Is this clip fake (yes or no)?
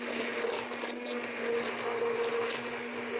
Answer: no